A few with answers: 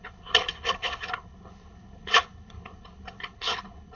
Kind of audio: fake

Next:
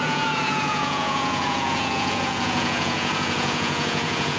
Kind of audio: fake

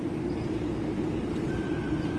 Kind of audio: real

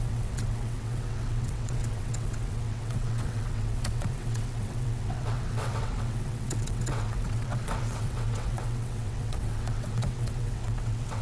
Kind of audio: fake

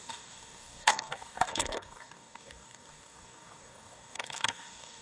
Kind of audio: fake